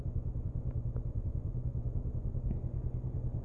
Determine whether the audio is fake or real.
fake